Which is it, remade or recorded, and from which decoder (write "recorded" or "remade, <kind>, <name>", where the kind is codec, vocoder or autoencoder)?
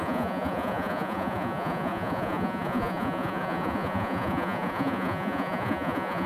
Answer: remade, vocoder, Vocos